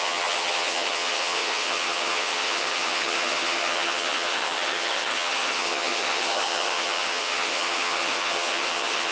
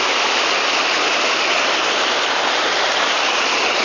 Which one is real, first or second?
second